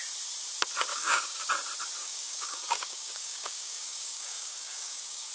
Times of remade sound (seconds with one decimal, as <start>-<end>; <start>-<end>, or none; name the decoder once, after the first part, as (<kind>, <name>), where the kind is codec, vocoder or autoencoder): 0.9-1.5 (codec, DAC); 2.0-5.3